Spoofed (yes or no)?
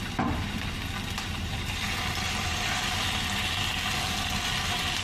no